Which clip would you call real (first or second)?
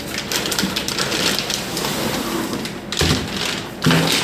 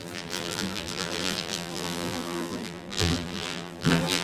first